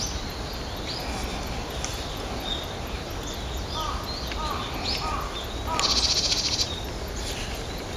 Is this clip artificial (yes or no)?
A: no